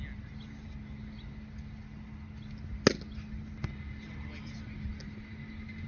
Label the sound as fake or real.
real